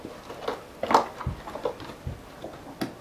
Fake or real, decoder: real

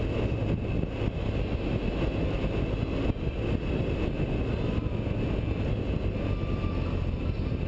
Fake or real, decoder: real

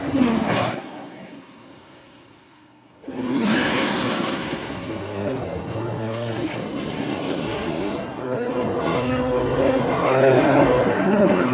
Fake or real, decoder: fake, codec, SNAC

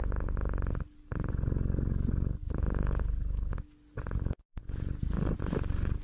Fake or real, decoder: real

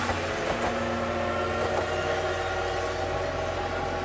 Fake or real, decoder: real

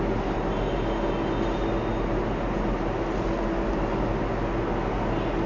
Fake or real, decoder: real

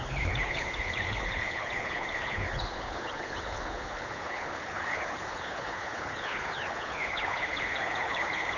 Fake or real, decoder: fake, codec, HILCodec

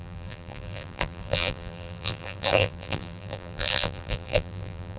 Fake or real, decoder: fake, vocoder, BigVGAN v2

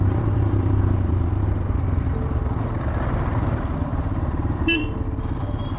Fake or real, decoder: fake, vocoder, BigVGAN v2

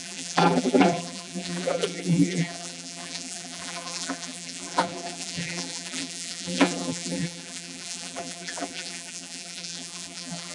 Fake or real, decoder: fake, vocoder, BigVGAN v2